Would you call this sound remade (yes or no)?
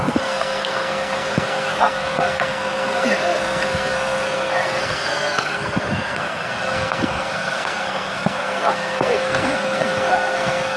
yes